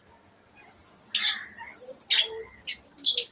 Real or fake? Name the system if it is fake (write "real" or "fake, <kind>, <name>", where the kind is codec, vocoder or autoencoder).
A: fake, vocoder, BigVGAN v2